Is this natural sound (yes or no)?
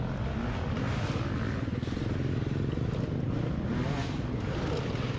yes